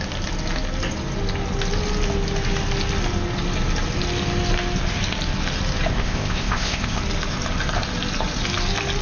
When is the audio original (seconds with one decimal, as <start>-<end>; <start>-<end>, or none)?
0.0-5.9; 7.0-9.0